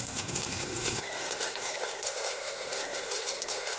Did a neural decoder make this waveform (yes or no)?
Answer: yes